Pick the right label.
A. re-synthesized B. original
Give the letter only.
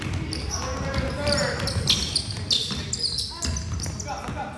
B